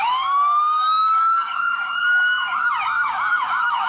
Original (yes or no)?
no